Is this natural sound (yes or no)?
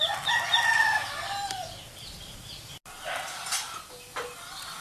yes